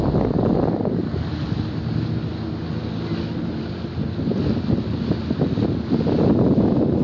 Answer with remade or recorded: recorded